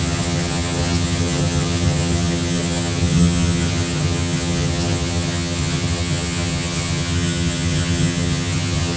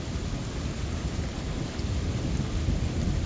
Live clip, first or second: second